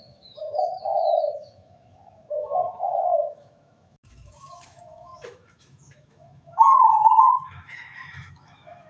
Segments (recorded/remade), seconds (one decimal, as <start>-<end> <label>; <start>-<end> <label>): 0.0-8.9 remade